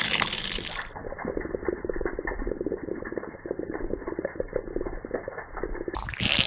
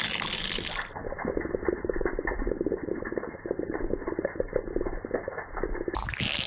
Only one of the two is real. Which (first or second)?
second